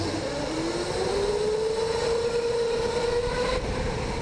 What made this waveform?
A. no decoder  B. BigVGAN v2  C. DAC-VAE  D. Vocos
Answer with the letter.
A